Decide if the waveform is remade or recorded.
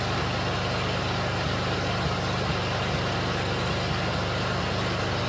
recorded